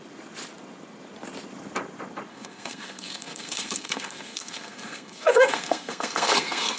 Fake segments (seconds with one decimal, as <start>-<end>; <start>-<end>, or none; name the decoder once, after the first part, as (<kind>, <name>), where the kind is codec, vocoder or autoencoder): 2.3-6.8 (codec, SNAC)